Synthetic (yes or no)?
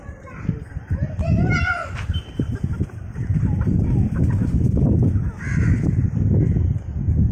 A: no